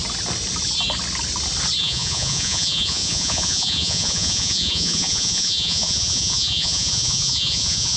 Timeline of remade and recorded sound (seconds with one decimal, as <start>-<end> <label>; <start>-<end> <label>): 0.0-1.8 recorded; 1.8-8.0 remade